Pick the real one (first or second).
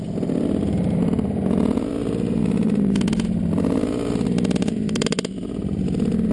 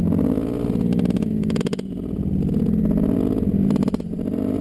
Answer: second